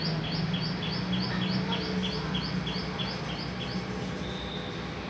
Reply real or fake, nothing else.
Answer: real